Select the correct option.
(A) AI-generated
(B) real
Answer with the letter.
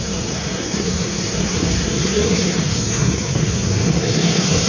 A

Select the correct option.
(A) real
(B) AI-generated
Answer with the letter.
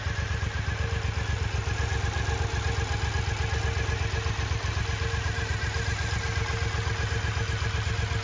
A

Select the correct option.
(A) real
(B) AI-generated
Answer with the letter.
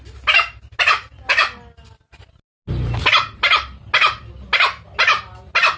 A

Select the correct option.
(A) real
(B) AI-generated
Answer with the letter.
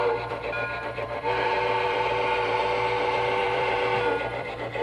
B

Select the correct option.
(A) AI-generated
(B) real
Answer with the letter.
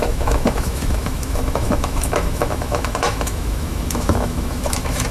A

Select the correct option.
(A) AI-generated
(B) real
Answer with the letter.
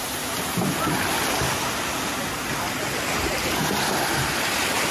B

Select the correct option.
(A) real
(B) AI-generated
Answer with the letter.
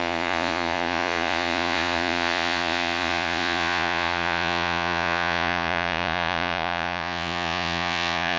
B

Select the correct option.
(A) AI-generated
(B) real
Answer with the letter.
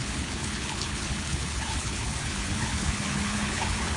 A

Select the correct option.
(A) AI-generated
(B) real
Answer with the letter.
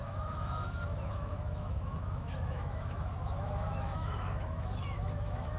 A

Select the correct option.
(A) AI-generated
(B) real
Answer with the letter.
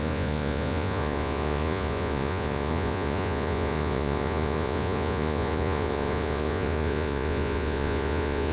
A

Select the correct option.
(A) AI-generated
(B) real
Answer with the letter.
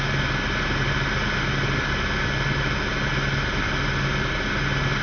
B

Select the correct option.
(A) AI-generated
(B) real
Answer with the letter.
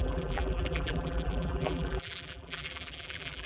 A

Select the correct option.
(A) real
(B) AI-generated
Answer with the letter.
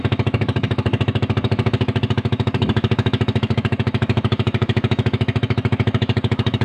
B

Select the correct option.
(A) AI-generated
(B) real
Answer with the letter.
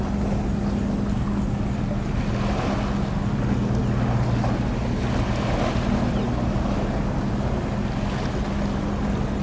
B